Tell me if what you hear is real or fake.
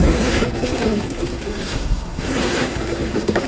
fake